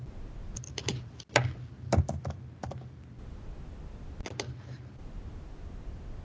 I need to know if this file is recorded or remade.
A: recorded